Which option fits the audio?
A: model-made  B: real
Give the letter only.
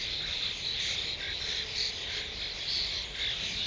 B